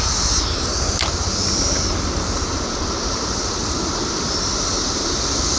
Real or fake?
real